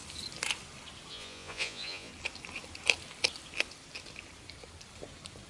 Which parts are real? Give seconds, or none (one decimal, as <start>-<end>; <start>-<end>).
0.0-1.1; 2.1-5.5